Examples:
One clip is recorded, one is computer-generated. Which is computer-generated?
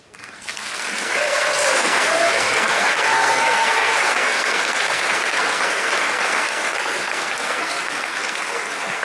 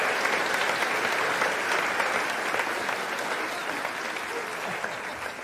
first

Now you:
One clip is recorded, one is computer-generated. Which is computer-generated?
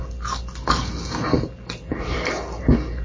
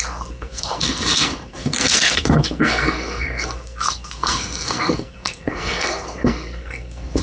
second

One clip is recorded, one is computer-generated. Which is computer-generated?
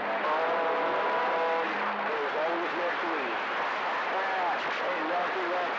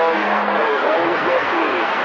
second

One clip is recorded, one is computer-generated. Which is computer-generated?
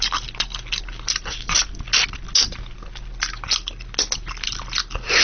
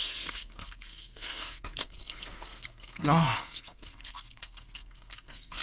second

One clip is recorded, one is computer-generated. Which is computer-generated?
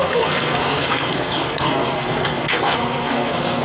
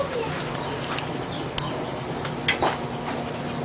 first